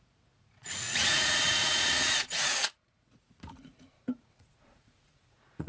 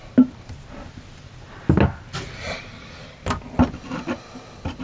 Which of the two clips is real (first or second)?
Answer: second